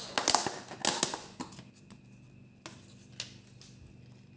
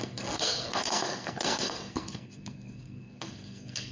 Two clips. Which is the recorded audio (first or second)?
first